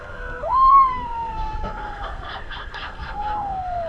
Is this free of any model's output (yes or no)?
no